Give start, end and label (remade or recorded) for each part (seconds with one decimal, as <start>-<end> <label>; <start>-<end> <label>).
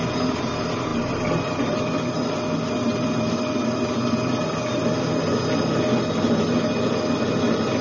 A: 0.0-7.8 recorded